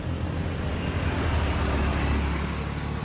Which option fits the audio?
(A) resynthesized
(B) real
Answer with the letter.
B